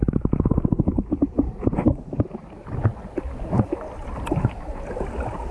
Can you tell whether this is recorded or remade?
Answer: recorded